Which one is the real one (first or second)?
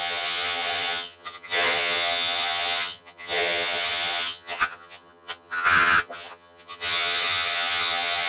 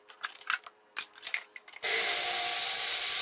second